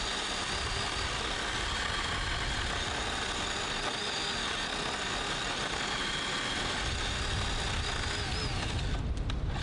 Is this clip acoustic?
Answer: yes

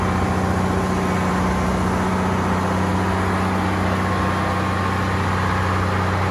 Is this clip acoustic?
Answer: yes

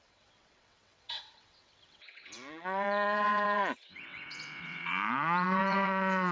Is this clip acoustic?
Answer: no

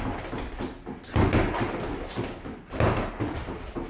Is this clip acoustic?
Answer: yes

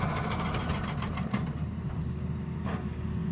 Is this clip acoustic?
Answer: yes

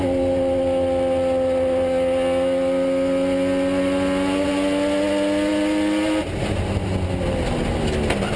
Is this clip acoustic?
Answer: yes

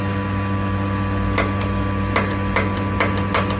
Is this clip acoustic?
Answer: yes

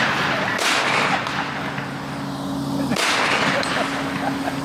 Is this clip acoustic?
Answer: yes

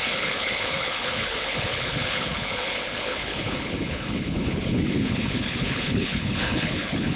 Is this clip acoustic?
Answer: no